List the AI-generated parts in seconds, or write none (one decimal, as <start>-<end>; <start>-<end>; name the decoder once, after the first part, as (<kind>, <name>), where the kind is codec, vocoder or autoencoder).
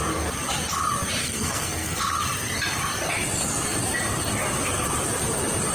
1.2-2.0 (codec, SNAC)